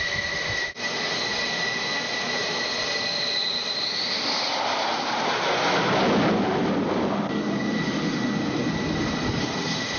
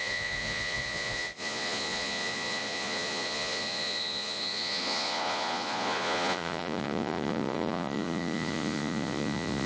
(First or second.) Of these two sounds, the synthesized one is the second